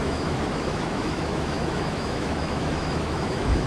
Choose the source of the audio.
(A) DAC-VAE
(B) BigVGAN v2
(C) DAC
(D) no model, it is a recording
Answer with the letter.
A